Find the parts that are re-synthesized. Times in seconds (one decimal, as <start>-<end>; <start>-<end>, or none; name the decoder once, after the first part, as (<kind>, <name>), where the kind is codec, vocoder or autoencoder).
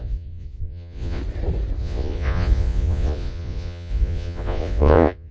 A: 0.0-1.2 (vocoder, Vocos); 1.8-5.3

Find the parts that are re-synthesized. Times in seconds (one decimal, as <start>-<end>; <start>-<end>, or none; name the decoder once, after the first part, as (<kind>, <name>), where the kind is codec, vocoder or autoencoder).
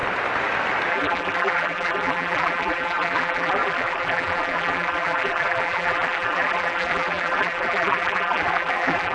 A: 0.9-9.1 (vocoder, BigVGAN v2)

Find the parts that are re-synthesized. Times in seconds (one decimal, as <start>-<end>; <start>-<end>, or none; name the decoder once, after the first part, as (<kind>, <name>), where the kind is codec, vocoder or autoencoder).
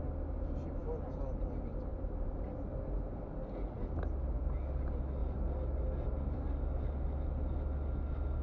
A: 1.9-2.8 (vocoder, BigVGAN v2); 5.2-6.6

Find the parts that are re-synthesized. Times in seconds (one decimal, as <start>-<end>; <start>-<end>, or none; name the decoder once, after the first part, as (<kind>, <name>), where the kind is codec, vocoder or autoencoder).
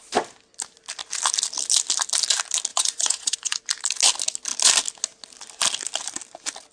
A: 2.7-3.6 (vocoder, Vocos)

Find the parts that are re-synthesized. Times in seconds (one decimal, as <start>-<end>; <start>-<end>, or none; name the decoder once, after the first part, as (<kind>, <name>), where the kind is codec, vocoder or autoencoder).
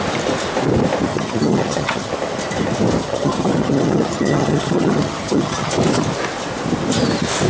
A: 1.1-2.1 (vocoder, HiFi-GAN); 3.0-5.7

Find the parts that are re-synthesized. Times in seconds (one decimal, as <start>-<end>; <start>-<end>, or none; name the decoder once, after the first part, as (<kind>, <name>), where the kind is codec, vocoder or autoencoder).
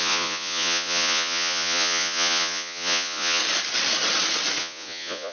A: 0.0-3.4 (vocoder, Vocos); 4.6-5.3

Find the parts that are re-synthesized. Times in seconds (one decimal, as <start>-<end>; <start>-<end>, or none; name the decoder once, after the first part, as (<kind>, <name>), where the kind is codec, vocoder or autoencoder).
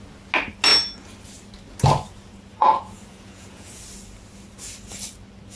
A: 2.5-3.8 (vocoder, Vocos)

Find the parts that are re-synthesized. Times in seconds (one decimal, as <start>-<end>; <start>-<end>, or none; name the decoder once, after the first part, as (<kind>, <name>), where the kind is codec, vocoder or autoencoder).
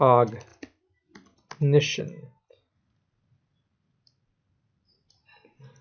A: none